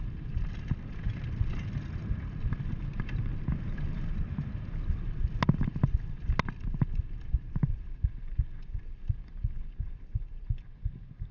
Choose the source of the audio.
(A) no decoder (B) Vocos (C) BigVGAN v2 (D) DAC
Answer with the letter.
A